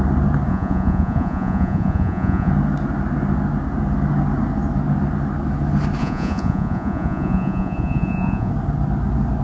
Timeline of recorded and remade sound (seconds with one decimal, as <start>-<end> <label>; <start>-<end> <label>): 0.0-0.5 recorded; 0.5-2.5 remade; 2.5-6.0 recorded; 6.0-8.5 remade; 8.5-9.4 recorded